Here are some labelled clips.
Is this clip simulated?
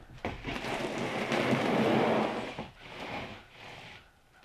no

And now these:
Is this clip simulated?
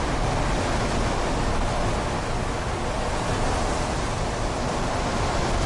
no